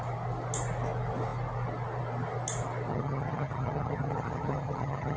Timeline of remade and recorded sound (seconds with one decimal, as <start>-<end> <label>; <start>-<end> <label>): 0.0-2.9 recorded; 2.9-5.2 remade